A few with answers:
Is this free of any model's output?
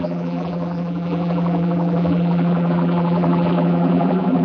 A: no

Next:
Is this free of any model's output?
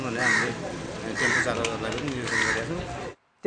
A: no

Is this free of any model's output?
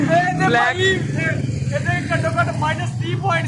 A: yes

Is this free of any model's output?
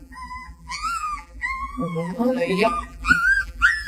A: no